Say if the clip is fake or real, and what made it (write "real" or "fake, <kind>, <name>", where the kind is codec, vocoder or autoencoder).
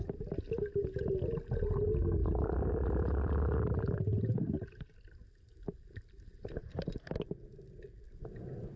real